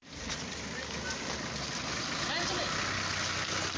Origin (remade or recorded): recorded